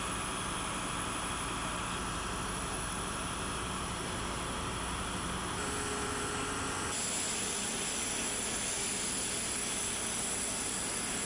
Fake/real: real